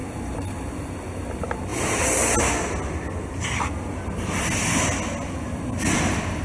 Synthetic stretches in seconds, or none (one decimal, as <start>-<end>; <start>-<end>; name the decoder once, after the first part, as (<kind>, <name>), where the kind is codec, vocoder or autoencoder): 0.0-0.9 (vocoder, BigVGAN v2)